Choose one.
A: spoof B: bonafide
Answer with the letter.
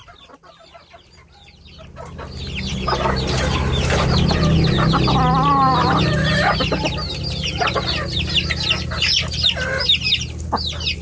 B